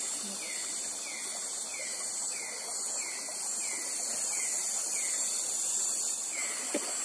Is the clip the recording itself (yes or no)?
yes